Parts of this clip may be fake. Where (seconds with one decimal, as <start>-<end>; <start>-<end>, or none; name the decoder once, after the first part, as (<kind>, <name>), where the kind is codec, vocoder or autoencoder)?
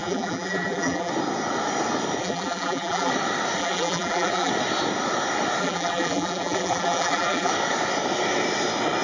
0.0-1.1 (vocoder, BigVGAN v2); 2.2-3.1; 3.6-4.5; 5.6-7.5